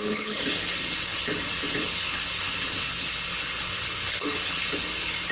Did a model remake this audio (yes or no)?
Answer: yes